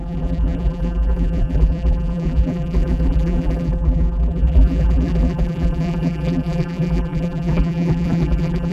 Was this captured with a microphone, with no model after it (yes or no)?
no